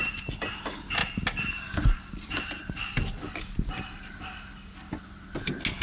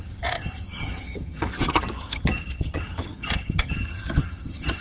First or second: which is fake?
second